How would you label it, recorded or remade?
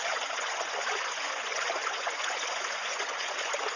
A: remade